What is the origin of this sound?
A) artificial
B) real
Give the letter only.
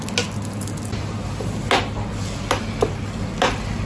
B